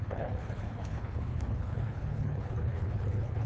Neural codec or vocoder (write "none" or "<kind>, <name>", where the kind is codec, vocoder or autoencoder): codec, HILCodec